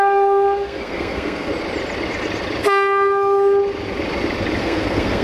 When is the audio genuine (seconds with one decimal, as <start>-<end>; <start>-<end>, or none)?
1.5-4.6